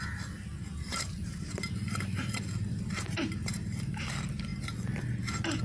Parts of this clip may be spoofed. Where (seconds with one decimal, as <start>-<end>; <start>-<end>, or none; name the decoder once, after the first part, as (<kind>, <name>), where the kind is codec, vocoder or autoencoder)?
0.7-4.1 (vocoder, BigVGAN v2)